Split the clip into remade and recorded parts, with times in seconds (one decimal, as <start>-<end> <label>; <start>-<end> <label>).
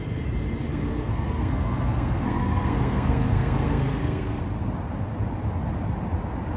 0.0-0.7 recorded; 0.7-4.4 remade; 4.4-6.6 recorded